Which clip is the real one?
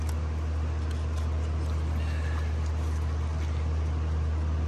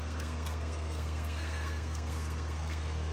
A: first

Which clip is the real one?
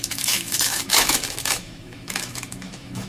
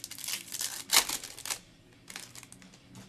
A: second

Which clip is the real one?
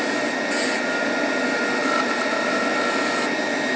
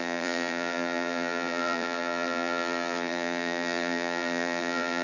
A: first